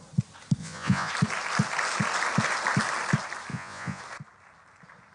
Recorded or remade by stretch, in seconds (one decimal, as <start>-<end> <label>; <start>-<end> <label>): 0.0-0.6 recorded; 0.6-1.1 remade; 1.1-3.5 recorded; 3.5-4.0 remade; 4.0-5.1 recorded